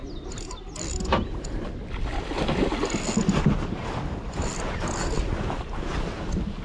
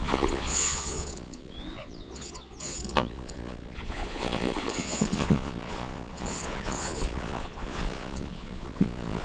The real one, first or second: first